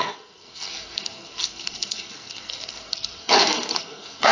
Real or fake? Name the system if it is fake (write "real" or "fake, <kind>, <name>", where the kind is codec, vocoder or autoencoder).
fake, codec, SNAC